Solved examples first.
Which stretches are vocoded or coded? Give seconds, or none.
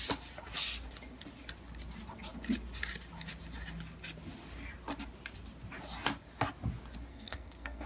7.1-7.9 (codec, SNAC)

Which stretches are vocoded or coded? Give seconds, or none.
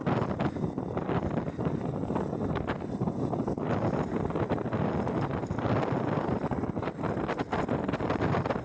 none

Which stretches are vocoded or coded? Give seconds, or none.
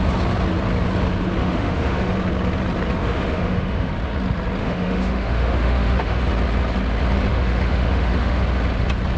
1.4-2.1 (autoencoder, DAC-VAE); 3.0-3.9; 4.6-6.2; 7.3-8.4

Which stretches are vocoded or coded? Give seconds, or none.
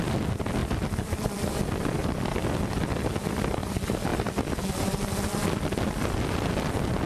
0.6-1.6 (vocoder, BigVGAN v2); 2.0-3.1; 4.1-4.9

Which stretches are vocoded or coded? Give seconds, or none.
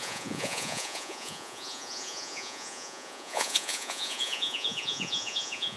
0.0-5.8 (vocoder, Vocos)